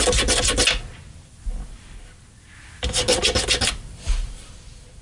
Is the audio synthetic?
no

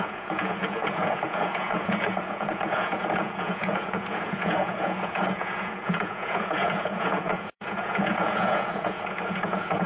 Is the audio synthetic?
yes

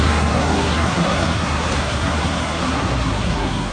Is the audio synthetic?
yes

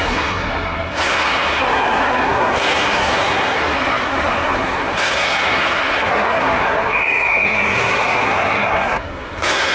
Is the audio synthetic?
yes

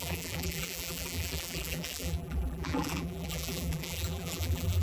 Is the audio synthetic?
yes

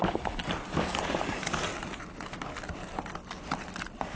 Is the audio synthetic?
no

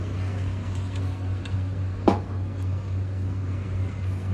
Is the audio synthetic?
yes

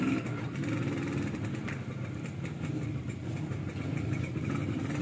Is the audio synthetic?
no